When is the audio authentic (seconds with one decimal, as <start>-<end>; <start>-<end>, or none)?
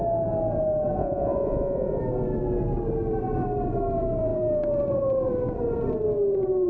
0.0-1.0; 2.0-6.7